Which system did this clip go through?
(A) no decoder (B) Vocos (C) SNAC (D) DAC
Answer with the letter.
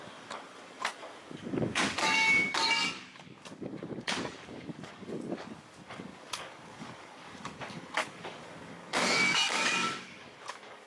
D